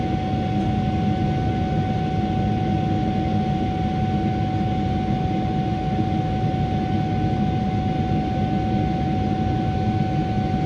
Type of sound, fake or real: real